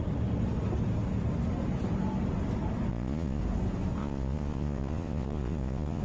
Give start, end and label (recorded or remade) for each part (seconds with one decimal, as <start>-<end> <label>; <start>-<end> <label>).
0.0-2.9 recorded; 2.9-3.4 remade; 3.4-4.0 recorded; 4.0-6.0 remade